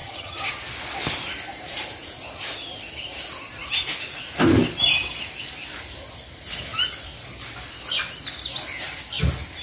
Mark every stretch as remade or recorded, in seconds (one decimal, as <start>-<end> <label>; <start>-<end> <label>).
0.0-0.5 remade; 0.5-9.6 recorded